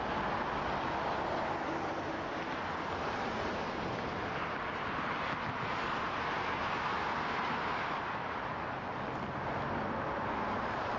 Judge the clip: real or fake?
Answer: real